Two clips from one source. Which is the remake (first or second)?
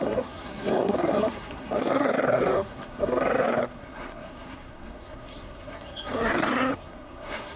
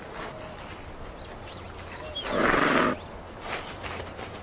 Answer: first